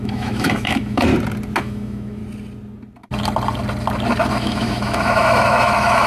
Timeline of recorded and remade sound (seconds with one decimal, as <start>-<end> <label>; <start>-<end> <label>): 0.0-1.1 remade; 1.1-1.6 recorded; 1.6-2.2 remade; 2.2-4.3 recorded; 4.3-6.1 remade